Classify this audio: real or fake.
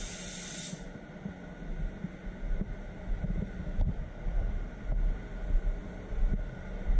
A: real